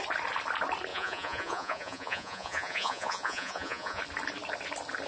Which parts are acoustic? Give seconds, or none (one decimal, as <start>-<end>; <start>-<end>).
0.0-0.9; 4.0-5.1